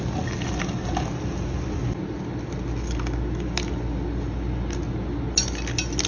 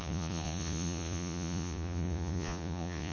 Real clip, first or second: first